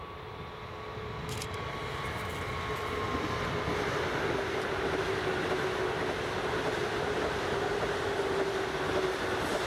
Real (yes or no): yes